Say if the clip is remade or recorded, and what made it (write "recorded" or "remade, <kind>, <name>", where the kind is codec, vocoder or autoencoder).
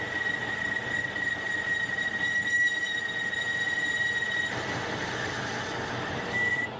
remade, vocoder, BigVGAN v2